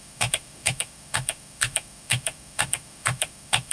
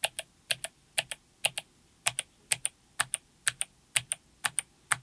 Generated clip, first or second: first